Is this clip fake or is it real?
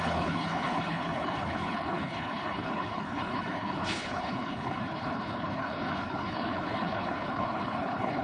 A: fake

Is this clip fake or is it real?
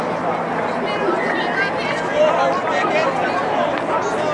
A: real